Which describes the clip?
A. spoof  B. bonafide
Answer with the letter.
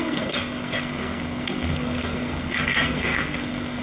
A